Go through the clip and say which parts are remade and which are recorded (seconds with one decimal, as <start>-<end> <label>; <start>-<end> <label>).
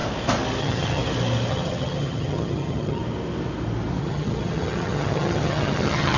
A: 0.0-0.6 recorded; 0.6-1.0 remade; 1.0-1.5 recorded; 1.5-3.0 remade; 3.0-4.0 recorded; 4.0-6.2 remade